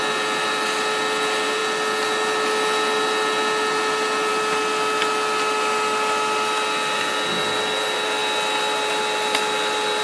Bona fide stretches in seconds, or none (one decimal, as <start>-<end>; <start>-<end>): 0.0-10.0

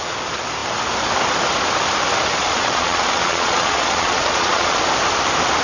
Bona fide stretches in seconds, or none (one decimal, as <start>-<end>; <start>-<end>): 0.0-2.4; 4.8-5.6

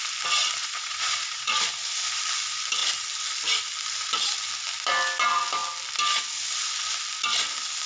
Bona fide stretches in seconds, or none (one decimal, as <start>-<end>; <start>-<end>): 0.0-0.6; 1.6-7.9